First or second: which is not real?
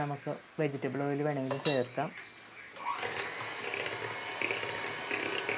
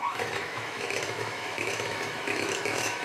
second